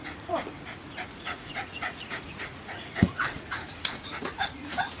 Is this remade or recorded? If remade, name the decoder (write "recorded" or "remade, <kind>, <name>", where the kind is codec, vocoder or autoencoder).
remade, vocoder, Vocos